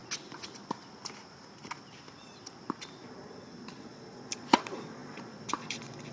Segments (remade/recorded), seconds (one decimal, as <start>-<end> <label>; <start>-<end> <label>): 0.0-3.7 recorded; 3.7-6.1 remade